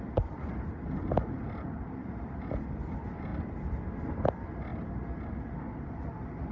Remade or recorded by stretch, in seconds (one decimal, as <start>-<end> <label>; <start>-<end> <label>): 0.0-6.5 recorded